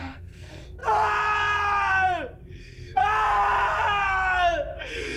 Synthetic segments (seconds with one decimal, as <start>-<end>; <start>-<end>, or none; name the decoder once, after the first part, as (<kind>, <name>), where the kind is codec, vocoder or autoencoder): 0.0-0.8 (codec, SNAC); 2.5-3.0; 4.8-5.2